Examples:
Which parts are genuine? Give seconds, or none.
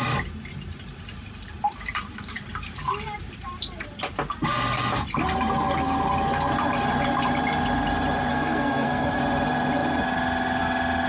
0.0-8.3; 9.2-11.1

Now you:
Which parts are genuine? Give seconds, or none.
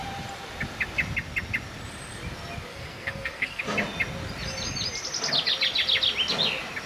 0.0-2.7; 3.6-6.9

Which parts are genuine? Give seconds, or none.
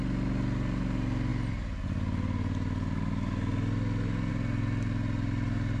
0.0-5.8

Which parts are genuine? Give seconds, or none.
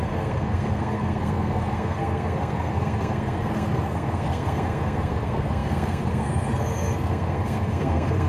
none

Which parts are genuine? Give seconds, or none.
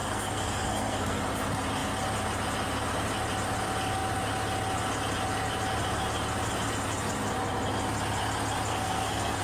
1.2-8.7